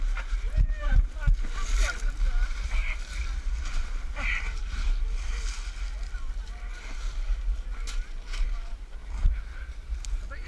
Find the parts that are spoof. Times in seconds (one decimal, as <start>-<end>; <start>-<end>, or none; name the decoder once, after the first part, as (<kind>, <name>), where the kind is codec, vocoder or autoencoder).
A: none